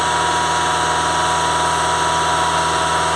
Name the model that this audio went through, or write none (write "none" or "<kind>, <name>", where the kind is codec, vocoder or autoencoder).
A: none